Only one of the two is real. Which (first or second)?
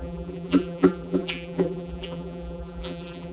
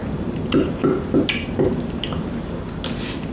second